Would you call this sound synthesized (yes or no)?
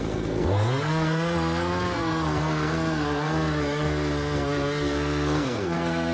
yes